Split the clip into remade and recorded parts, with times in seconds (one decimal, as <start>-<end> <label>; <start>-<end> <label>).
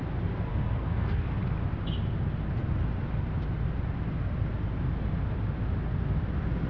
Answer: 0.0-0.5 recorded; 0.5-1.4 remade; 1.4-6.7 recorded